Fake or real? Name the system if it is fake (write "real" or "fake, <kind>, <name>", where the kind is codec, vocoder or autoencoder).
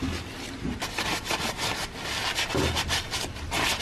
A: real